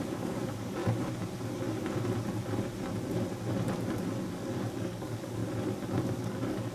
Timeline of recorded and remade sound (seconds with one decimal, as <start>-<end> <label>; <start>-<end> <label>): 0.0-0.8 remade; 0.8-4.3 recorded; 4.3-5.4 remade; 5.4-6.0 recorded; 6.0-6.7 remade